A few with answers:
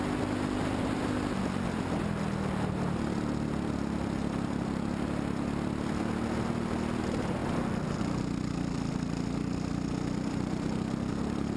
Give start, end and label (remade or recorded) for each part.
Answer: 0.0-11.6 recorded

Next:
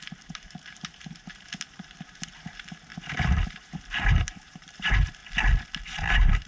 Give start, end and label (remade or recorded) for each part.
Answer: 0.0-5.2 remade; 5.2-5.8 recorded; 5.8-6.5 remade

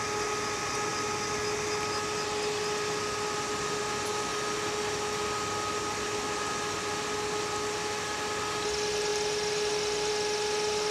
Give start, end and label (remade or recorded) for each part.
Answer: 0.0-10.9 recorded

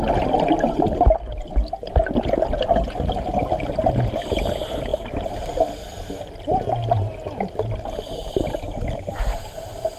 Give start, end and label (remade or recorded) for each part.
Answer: 0.0-10.0 recorded

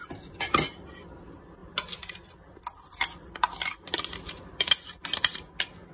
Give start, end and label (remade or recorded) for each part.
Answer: 0.0-1.6 recorded; 1.6-4.7 remade; 4.7-5.9 recorded